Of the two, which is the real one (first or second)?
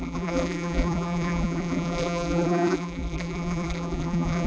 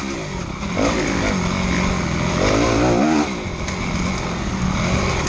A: second